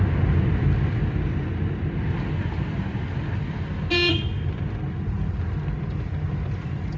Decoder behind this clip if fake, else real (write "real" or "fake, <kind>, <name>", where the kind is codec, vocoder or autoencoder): real